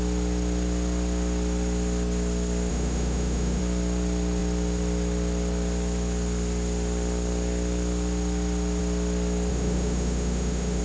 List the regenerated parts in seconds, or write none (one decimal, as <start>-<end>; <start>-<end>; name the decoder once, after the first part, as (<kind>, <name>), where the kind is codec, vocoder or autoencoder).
2.7-3.6 (autoencoder, DAC-VAE); 9.5-10.8